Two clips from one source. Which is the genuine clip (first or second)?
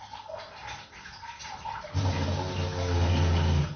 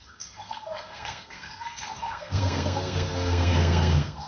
first